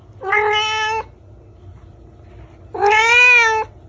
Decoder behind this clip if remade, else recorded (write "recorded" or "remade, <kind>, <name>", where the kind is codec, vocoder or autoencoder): recorded